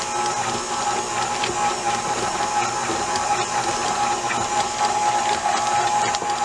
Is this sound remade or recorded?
recorded